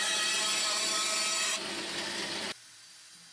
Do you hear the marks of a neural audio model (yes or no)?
no